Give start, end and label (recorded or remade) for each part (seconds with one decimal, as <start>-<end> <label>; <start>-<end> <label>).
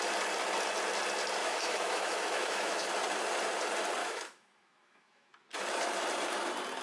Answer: 0.0-1.4 recorded; 1.4-2.9 remade; 2.9-4.0 recorded; 4.0-5.3 remade; 5.3-6.8 recorded